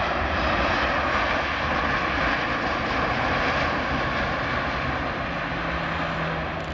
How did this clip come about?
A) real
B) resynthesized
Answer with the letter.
A